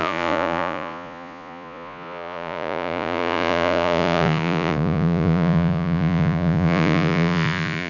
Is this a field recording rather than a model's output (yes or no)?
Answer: no